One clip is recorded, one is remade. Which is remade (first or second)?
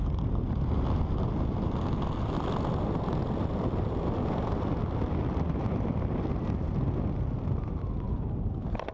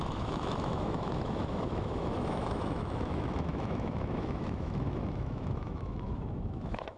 second